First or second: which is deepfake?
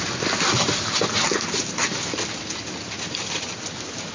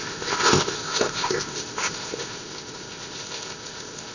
second